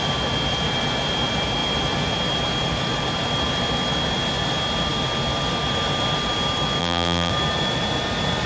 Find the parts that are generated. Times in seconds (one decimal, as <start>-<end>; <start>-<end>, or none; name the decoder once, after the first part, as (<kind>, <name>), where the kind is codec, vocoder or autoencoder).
6.8-7.3 (vocoder, BigVGAN v2)

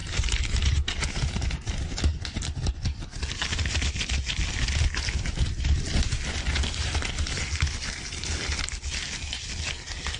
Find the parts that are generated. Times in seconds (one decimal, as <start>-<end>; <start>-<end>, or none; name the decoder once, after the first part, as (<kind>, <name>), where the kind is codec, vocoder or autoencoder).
none